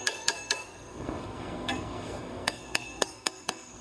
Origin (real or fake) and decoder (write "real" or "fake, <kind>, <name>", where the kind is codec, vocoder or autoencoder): fake, codec, SNAC